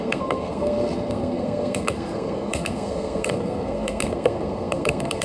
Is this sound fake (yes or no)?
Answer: yes